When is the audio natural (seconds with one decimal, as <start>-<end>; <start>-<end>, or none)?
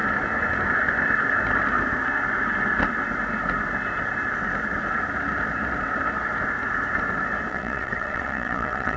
0.0-7.5